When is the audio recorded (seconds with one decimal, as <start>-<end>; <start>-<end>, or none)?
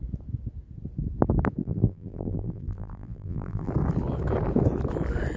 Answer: 0.0-1.6; 3.7-5.4